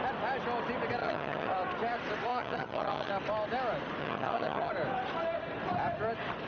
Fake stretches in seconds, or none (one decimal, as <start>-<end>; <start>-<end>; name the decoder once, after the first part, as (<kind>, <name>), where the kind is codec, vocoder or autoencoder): 1.0-1.5 (vocoder, HiFi-GAN); 2.3-3.1; 4.0-4.7